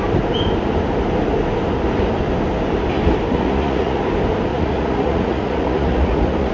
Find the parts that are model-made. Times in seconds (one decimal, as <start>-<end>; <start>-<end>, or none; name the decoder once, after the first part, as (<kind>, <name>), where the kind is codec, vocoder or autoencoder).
3.3-4.0 (vocoder, Vocos); 4.5-6.5